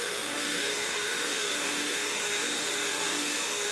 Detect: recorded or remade remade